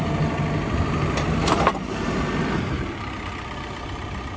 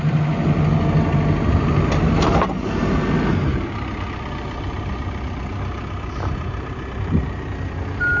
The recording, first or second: second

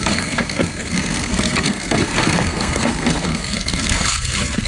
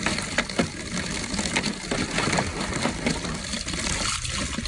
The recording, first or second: second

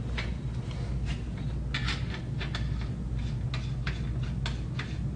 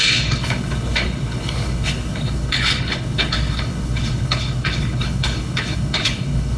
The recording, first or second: first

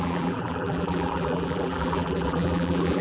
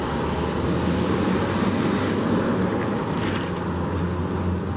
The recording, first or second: second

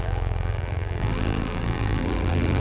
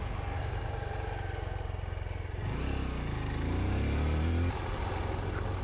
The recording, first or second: second